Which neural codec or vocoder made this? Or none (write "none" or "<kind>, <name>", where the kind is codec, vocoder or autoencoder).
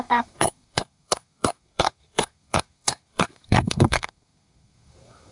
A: codec, SNAC